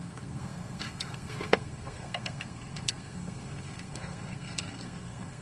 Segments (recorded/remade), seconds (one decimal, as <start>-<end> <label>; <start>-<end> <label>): 0.0-5.4 remade